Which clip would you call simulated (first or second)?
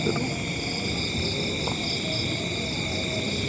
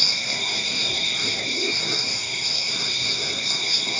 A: second